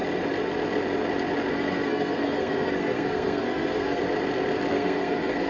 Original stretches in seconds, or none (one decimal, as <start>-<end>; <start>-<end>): 0.0-1.5; 4.0-4.7